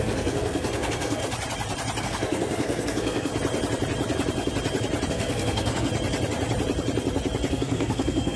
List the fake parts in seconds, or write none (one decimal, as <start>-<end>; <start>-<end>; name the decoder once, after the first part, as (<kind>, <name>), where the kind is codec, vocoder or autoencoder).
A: 0.0-1.2 (codec, SNAC); 2.0-3.3; 5.1-5.9; 7.5-8.4